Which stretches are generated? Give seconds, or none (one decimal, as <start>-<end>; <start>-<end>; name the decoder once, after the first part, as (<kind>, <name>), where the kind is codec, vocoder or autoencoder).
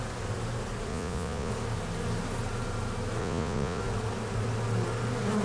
0.9-1.5 (vocoder, Vocos); 3.2-3.8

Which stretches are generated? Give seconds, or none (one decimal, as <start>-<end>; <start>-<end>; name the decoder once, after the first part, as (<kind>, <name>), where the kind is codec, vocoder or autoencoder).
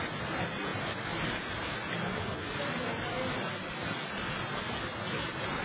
none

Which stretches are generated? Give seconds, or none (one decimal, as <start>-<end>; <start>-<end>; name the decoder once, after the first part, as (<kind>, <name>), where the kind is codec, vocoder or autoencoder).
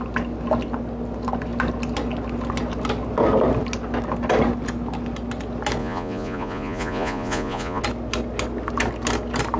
5.8-7.8 (vocoder, Vocos)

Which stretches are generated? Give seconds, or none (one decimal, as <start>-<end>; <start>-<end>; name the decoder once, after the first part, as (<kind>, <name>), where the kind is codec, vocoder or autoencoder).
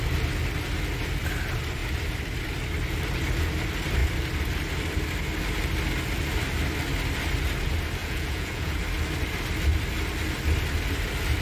8.0-8.8 (vocoder, Vocos)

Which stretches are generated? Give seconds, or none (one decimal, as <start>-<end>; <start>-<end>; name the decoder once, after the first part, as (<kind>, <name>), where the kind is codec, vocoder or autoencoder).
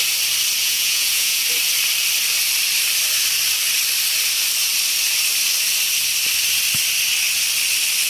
0.6-1.4 (vocoder, Vocos)